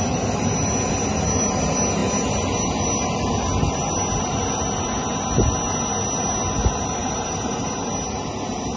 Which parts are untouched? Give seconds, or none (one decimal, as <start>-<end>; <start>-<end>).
0.0-7.0; 7.7-8.8